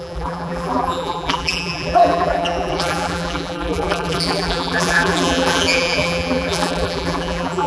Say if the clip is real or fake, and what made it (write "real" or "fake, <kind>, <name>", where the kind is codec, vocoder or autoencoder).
fake, vocoder, BigVGAN v2